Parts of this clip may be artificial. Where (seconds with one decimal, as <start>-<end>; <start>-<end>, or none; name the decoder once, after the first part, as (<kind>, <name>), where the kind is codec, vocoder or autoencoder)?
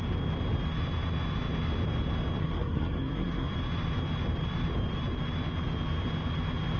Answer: 2.4-3.5 (codec, SNAC)